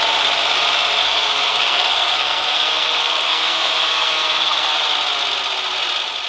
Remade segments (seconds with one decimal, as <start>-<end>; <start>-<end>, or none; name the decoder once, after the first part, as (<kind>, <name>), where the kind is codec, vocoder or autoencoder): 1.0-4.8 (codec, SNAC)